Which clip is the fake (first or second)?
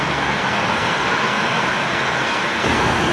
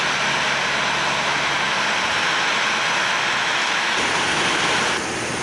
first